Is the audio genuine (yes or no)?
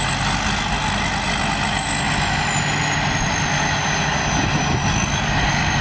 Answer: yes